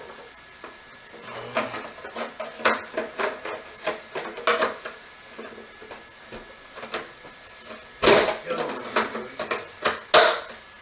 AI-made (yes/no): no